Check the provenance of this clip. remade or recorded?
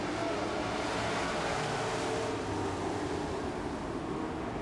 recorded